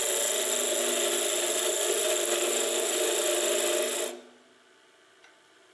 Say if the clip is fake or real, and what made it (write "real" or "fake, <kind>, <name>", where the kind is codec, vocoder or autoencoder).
real